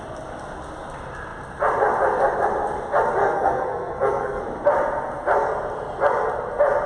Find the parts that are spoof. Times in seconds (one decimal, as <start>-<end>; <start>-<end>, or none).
3.2-4.4